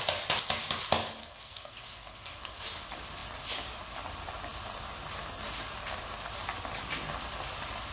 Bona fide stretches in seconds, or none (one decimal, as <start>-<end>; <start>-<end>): 0.0-1.2; 2.6-7.9